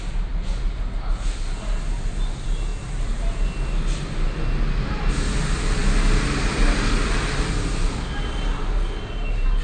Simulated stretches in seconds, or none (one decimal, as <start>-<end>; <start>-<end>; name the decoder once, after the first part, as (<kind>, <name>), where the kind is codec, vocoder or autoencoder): none